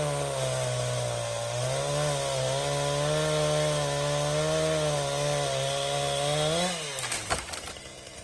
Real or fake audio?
real